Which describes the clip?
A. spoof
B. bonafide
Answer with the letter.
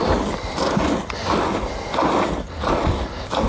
B